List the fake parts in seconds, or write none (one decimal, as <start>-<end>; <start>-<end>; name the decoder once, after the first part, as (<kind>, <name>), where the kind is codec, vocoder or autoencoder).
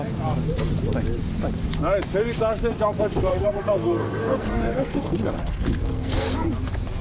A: 3.3-6.5 (codec, SNAC)